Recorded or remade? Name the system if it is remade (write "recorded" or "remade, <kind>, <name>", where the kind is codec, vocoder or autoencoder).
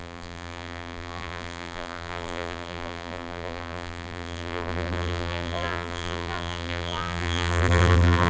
remade, vocoder, BigVGAN v2